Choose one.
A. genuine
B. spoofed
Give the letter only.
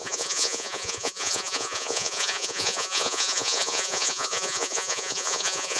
B